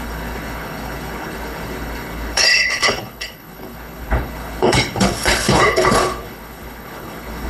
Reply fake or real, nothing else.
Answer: fake